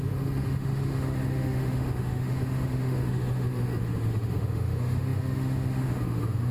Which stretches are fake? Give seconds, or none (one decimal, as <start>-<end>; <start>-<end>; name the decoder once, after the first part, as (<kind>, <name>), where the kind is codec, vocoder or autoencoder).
0.0-6.5 (autoencoder, DAC-VAE)